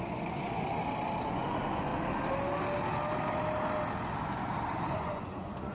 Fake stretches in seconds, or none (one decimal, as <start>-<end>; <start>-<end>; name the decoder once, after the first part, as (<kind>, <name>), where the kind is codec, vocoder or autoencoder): 0.0-0.8 (vocoder, Vocos); 1.3-1.9; 4.9-5.7